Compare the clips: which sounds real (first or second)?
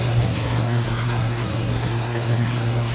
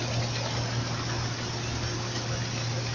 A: second